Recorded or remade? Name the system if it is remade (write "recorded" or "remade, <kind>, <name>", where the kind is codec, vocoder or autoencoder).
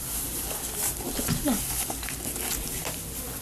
remade, vocoder, BigVGAN v2